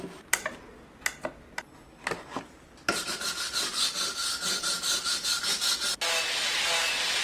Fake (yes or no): no